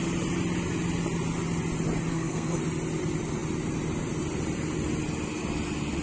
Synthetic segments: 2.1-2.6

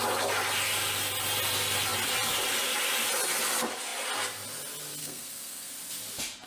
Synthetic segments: 5.0-5.7

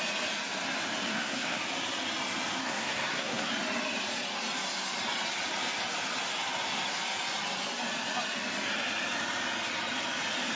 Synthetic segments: 1.1-1.6; 2.6-3.5

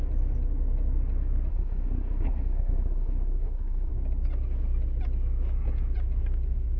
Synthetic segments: 1.5-3.9

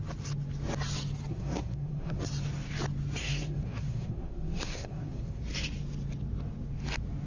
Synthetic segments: 1.3-2.2; 3.2-5.4

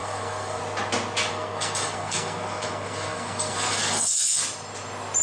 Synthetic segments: 0.0-0.6; 1.3-4.4